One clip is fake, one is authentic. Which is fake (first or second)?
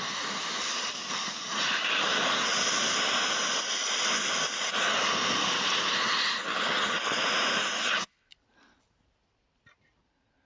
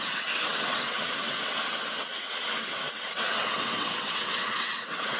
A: second